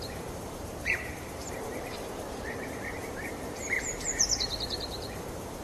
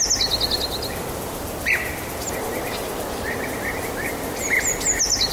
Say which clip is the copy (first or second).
first